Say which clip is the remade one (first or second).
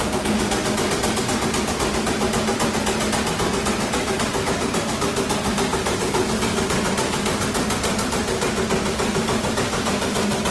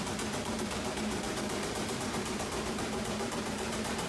second